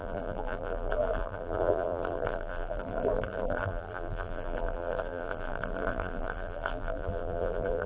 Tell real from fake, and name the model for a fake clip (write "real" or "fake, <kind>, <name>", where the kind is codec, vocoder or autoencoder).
fake, vocoder, BigVGAN v2